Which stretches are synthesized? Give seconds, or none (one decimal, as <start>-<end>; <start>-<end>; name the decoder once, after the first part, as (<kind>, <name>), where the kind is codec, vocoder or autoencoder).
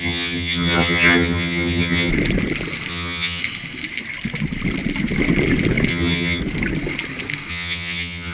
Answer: 0.0-2.1 (vocoder, HiFi-GAN); 2.9-3.4; 5.9-6.4; 7.5-8.3